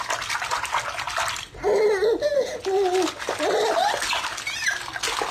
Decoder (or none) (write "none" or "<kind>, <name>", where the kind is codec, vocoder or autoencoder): none